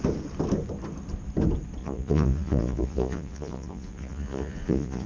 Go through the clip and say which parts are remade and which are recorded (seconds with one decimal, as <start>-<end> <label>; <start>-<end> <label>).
0.0-1.8 recorded; 1.8-5.1 remade